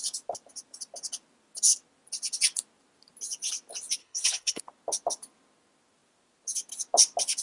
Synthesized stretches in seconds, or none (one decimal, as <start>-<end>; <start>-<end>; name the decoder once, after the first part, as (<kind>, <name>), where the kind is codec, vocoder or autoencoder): 4.0-4.6 (codec, HILCodec)